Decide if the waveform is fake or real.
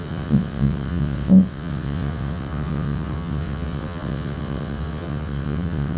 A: fake